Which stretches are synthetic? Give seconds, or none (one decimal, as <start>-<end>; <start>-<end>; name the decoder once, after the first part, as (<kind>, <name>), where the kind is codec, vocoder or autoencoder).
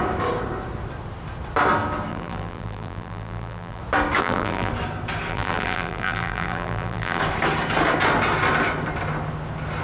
2.1-3.8 (vocoder, BigVGAN v2); 4.2-4.7; 5.3-7.2